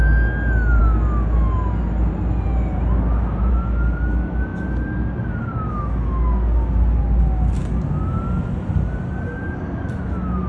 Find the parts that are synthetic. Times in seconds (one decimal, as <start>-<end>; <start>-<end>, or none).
none